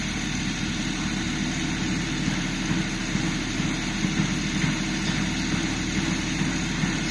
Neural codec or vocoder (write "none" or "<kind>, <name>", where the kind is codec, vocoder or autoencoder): none